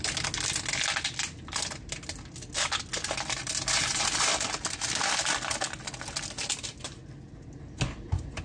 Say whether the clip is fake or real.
real